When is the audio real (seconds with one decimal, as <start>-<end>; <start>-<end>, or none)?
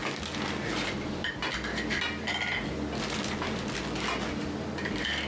0.0-5.3